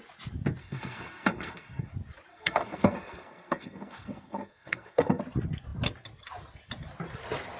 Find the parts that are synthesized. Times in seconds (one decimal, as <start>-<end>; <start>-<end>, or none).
0.6-1.9; 2.3-5.2